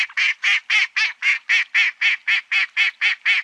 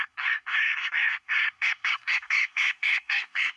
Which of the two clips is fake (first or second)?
second